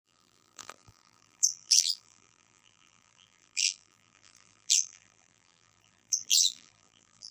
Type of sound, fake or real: fake